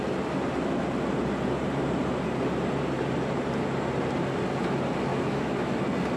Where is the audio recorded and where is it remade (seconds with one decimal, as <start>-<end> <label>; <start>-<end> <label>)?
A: 0.0-5.1 recorded; 5.1-5.7 remade; 5.7-6.2 recorded